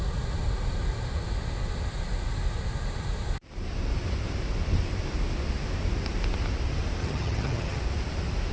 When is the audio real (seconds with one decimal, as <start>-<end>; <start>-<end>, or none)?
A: 0.0-7.0; 7.8-8.5